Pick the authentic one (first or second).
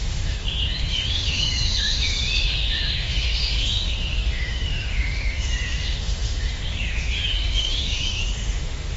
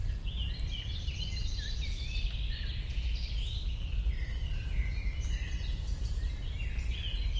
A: second